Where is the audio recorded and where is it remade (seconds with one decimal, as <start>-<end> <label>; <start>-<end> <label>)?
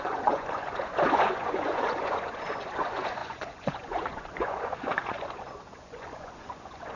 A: 0.0-7.0 remade